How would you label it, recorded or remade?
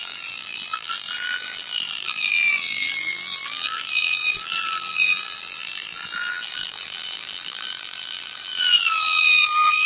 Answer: remade